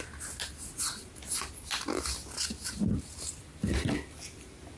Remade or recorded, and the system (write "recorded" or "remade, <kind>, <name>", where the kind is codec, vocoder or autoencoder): recorded